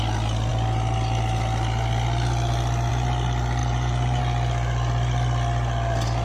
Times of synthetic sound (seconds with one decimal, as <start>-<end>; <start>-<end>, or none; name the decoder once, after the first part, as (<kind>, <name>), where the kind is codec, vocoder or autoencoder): 3.6-4.2 (vocoder, BigVGAN v2)